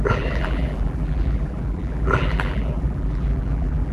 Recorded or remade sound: remade